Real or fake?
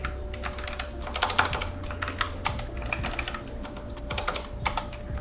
real